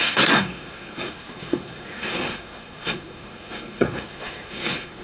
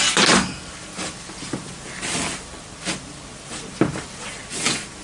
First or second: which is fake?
first